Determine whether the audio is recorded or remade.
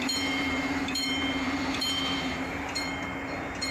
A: remade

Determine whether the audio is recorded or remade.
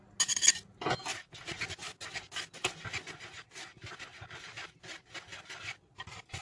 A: recorded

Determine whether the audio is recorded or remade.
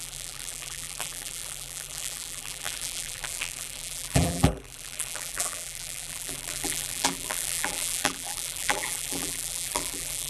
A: remade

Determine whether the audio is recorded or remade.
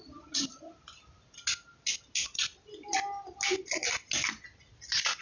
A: recorded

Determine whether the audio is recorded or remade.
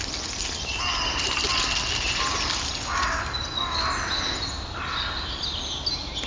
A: recorded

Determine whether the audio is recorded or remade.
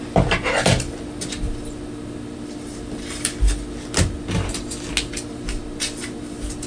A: recorded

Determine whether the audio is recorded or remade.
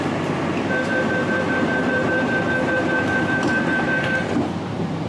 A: remade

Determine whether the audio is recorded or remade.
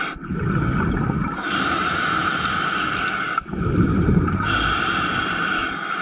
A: recorded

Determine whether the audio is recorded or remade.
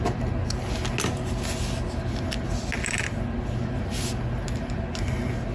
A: recorded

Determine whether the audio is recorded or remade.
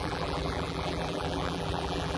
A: remade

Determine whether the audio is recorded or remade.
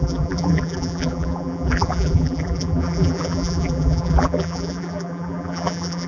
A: remade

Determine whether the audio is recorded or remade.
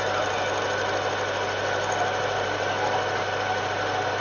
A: recorded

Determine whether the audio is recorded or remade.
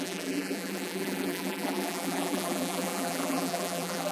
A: remade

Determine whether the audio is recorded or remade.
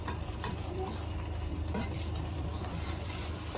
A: remade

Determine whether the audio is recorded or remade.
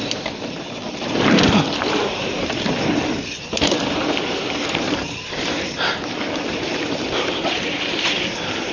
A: remade